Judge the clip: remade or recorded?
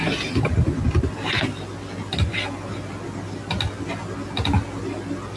recorded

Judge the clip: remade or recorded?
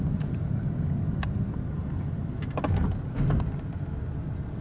recorded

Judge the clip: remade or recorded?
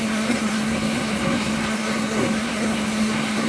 remade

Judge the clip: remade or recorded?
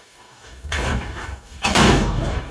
remade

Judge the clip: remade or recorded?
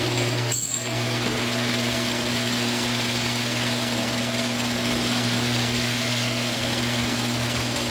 remade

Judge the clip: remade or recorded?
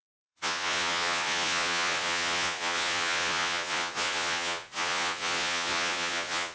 remade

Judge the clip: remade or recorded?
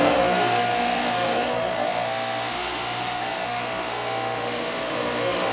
remade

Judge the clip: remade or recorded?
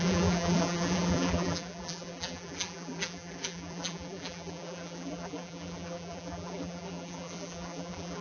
remade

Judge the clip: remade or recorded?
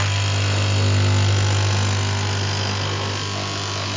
recorded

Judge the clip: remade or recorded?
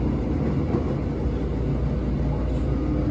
recorded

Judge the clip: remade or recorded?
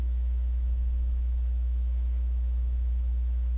remade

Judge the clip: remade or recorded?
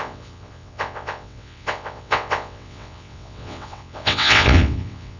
remade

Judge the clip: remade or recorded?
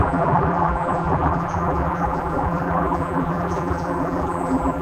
remade